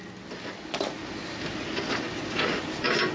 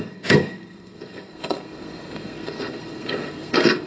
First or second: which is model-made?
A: second